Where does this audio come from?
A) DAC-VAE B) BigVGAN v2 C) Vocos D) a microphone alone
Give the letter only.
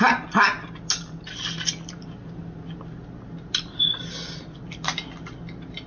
D